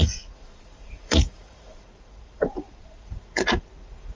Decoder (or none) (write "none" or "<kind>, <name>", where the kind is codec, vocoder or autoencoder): vocoder, Vocos